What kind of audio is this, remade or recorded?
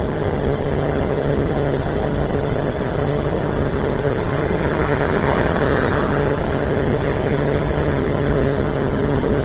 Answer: remade